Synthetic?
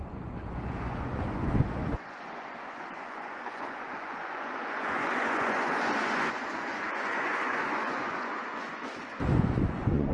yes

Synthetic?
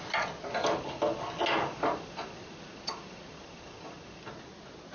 no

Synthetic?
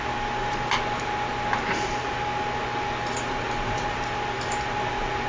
no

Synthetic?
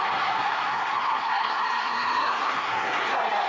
yes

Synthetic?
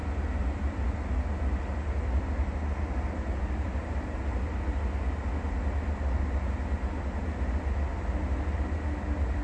no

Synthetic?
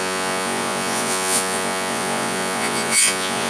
yes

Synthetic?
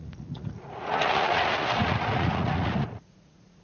yes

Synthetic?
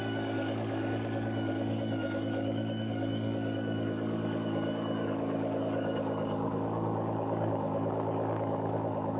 yes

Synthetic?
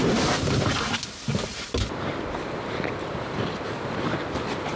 no